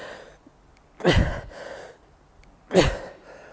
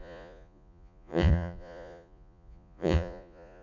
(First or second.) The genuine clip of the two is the first